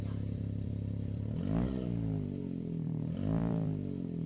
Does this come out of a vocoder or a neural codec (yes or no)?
yes